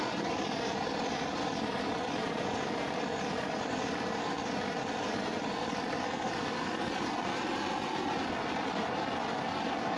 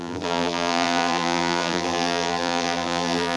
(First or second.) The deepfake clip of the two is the second